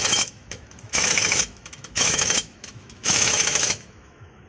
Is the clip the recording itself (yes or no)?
no